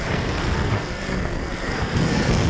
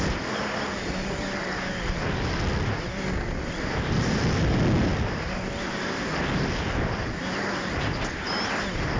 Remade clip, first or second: first